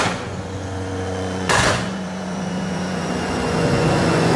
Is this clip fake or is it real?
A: fake